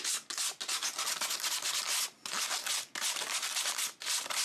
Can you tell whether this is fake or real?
real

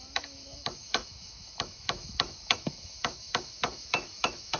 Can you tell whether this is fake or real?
fake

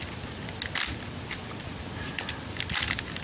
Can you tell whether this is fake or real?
real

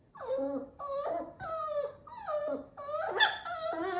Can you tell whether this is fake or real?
real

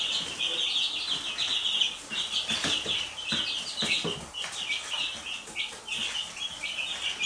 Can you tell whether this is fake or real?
real